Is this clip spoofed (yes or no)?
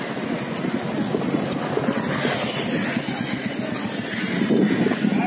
no